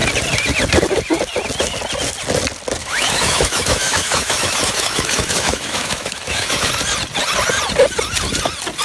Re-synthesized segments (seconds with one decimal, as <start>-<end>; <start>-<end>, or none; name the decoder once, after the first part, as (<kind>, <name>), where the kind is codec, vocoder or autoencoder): 2.8-6.7 (autoencoder, DAC-VAE)